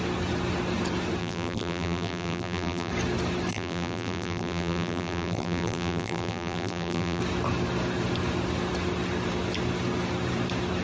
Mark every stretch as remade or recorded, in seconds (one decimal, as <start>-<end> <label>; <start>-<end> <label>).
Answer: 0.0-1.2 recorded; 1.2-2.9 remade; 2.9-3.5 recorded; 3.5-7.2 remade; 7.2-10.8 recorded